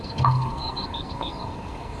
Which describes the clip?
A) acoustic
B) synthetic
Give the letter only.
B